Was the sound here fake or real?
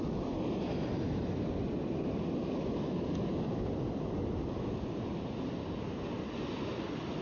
real